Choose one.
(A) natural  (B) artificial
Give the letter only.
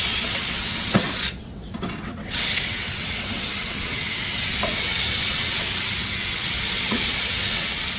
B